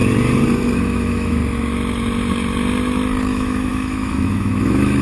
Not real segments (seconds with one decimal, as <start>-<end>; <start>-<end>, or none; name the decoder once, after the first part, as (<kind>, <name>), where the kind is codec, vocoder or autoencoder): 0.8-1.4 (autoencoder, DAC-VAE); 3.3-5.0